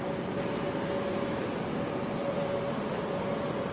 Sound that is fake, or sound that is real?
real